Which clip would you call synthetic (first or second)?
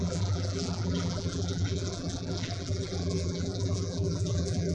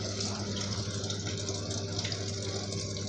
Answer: first